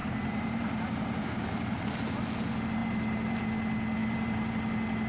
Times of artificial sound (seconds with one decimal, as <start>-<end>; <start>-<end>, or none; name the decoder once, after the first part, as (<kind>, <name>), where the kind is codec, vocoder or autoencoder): 0.0-1.8 (vocoder, BigVGAN v2); 2.8-3.4; 4.0-4.5